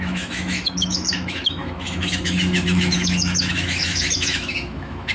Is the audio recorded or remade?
remade